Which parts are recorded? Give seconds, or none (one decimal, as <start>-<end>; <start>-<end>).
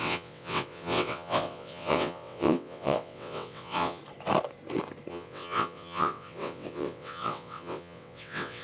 4.0-5.1